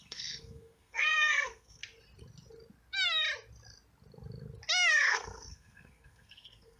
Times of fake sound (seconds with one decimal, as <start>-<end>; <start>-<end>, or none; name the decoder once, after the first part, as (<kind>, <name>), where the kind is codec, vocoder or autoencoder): 0.0-1.8 (codec, SNAC); 4.9-6.8